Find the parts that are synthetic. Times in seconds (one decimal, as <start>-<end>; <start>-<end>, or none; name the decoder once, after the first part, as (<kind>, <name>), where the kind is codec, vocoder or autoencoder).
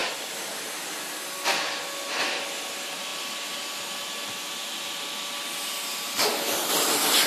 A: none